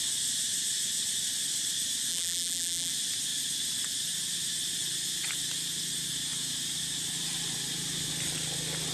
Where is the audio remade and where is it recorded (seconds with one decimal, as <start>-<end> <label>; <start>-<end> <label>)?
0.0-2.1 recorded; 2.1-2.9 remade; 2.9-8.9 recorded